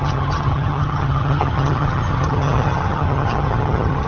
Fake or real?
fake